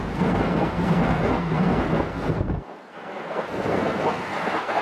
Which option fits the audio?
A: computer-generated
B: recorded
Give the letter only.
A